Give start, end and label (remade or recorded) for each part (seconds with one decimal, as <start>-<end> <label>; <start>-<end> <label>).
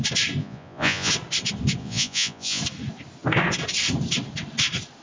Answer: 0.0-0.4 recorded; 0.4-1.1 remade; 1.1-1.8 recorded; 1.8-2.6 remade; 2.6-5.0 recorded